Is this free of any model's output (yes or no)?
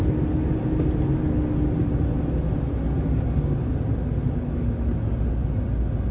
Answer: yes